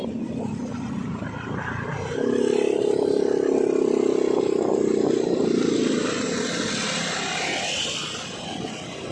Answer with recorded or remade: recorded